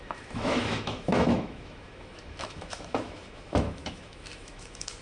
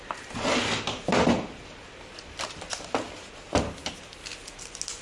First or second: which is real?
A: second